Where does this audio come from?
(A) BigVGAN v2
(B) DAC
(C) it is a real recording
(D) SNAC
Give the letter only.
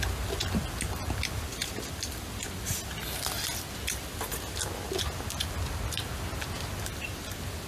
C